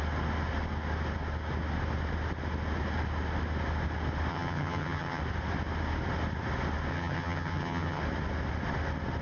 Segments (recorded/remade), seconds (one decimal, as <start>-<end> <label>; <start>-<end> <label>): 0.0-4.3 recorded; 4.3-5.2 remade; 5.2-6.9 recorded; 6.9-8.0 remade; 8.0-9.2 recorded